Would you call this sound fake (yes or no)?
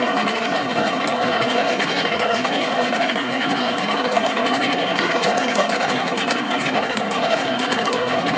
yes